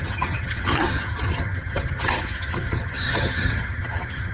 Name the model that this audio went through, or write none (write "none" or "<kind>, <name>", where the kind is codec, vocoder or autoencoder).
vocoder, HiFi-GAN